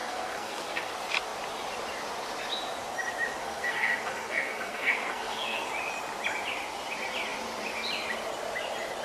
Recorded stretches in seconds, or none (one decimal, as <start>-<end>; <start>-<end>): 0.9-3.4; 5.7-9.0